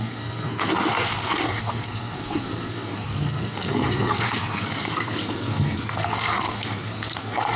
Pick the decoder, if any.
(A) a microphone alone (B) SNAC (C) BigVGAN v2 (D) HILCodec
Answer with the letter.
B